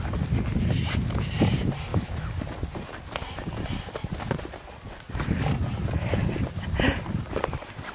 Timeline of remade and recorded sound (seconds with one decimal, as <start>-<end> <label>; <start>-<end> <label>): 0.0-1.9 recorded; 1.9-2.4 remade; 2.4-7.9 recorded